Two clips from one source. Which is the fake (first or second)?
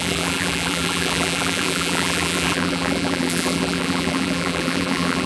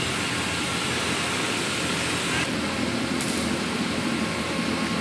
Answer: first